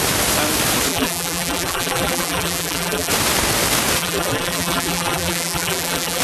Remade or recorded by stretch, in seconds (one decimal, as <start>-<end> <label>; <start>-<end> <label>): 0.0-0.9 recorded; 0.9-3.1 remade; 3.1-4.0 recorded; 4.0-6.2 remade